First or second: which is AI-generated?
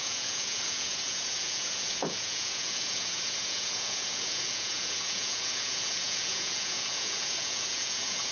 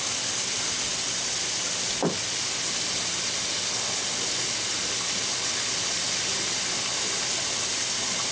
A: first